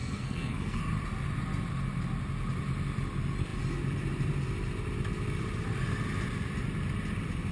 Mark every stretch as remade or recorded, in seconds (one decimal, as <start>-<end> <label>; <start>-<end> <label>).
0.0-0.8 remade; 0.8-7.5 recorded

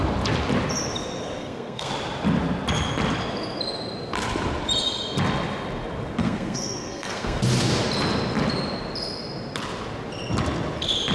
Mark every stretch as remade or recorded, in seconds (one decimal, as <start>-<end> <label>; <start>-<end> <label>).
0.0-1.4 recorded; 1.4-1.9 remade; 1.9-6.2 recorded; 6.2-7.4 remade; 7.4-11.1 recorded